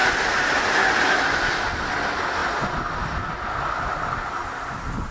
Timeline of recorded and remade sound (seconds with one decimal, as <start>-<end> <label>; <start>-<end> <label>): 0.0-5.1 recorded